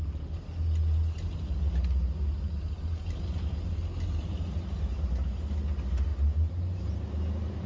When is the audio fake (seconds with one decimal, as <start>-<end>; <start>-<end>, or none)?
none